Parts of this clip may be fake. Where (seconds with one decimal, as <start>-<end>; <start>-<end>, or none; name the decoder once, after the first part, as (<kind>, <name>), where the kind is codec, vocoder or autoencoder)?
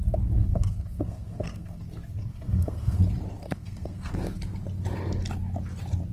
0.4-1.8 (codec, SNAC); 2.3-3.0; 3.4-4.1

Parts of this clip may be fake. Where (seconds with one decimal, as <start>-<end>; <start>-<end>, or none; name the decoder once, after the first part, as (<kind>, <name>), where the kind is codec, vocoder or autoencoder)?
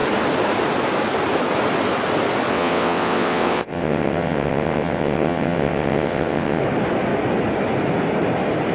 2.5-6.6 (vocoder, WaveNeXt)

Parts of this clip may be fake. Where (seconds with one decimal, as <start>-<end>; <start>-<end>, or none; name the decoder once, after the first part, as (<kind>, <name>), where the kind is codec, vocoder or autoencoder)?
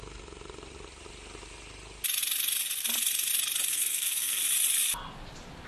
3.7-4.4 (codec, SNAC)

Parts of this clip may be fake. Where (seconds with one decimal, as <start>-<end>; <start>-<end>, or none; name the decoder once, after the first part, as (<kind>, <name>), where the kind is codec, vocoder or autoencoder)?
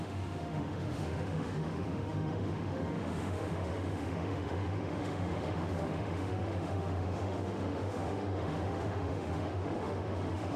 0.0-10.6 (autoencoder, DAC-VAE)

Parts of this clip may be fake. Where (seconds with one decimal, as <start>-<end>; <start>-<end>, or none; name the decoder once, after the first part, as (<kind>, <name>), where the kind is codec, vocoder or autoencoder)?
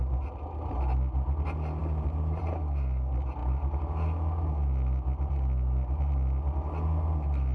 none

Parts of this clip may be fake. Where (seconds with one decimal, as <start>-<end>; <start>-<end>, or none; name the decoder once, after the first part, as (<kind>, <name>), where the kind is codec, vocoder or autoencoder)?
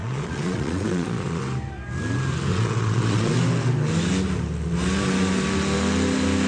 0.0-1.4 (vocoder, Vocos); 2.5-3.3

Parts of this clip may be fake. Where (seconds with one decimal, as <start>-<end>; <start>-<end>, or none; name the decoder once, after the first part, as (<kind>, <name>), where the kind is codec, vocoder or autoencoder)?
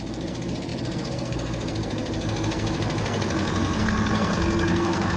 0.0-5.2 (codec, SNAC)